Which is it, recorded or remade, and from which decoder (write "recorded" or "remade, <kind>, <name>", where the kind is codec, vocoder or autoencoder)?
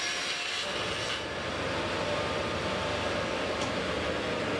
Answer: recorded